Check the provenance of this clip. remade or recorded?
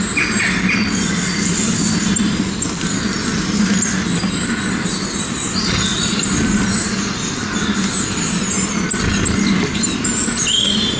recorded